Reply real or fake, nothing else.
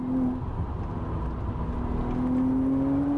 real